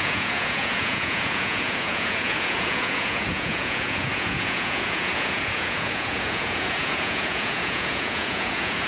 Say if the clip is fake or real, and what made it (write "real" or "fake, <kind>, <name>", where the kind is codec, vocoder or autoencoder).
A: fake, vocoder, Vocos